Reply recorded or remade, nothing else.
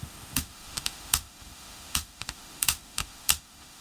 remade